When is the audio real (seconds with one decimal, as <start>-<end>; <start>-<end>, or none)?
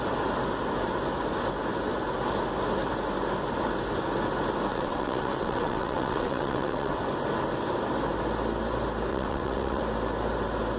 0.0-4.7; 7.0-9.1; 9.8-10.8